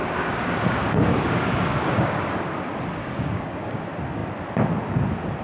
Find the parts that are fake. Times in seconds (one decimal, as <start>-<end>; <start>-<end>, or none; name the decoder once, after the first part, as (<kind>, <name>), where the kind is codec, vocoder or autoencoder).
0.0-2.4 (codec, DAC); 3.0-3.8